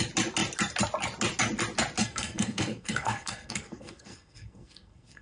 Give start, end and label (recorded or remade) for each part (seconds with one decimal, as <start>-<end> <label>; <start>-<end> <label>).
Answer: 0.0-2.0 recorded; 2.0-5.2 remade